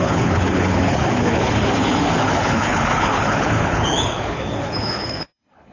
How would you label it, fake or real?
fake